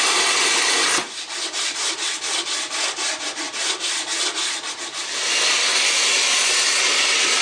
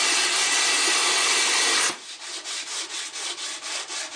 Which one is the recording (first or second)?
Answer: second